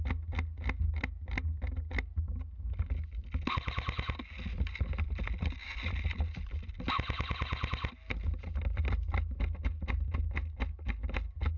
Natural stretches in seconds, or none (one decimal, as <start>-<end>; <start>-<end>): 0.0-11.6